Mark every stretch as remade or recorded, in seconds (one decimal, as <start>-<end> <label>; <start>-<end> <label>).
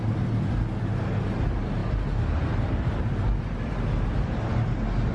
0.0-5.1 recorded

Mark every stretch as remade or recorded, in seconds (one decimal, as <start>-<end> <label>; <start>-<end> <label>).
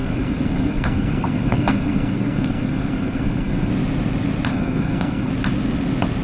0.0-3.7 remade; 3.7-4.5 recorded; 4.5-5.3 remade; 5.3-6.2 recorded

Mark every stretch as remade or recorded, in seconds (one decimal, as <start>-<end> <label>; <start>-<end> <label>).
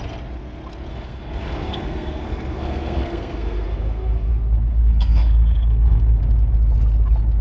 0.0-0.9 recorded; 0.9-4.3 remade; 4.3-4.7 recorded; 4.7-6.2 remade; 6.2-7.4 recorded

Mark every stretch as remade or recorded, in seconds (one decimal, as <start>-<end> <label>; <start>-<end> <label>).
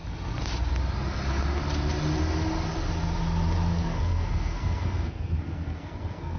0.0-3.7 recorded; 3.7-6.4 remade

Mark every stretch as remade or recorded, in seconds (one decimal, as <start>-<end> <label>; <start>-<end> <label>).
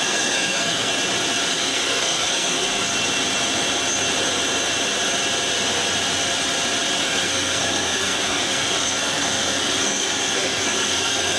0.0-0.9 remade; 0.9-1.5 recorded; 1.5-2.9 remade; 2.9-7.0 recorded; 7.0-11.4 remade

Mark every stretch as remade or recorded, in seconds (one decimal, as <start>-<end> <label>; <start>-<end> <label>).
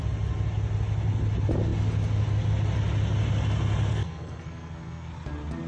0.0-3.9 recorded; 3.9-5.1 remade; 5.1-5.7 recorded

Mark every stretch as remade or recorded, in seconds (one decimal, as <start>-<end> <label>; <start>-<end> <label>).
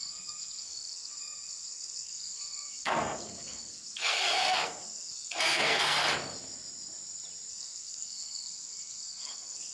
0.0-6.0 remade; 6.0-7.5 recorded; 7.5-9.7 remade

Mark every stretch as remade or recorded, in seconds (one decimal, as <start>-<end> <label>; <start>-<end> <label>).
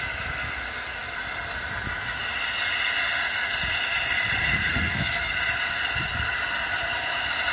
0.0-4.7 recorded; 4.7-5.4 remade; 5.4-7.5 recorded